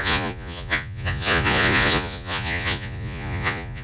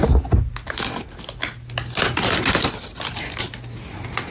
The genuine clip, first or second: second